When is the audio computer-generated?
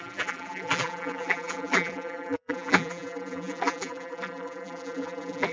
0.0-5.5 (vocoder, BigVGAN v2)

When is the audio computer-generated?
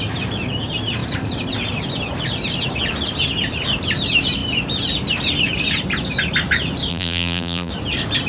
6.9-7.7 (vocoder, BigVGAN v2)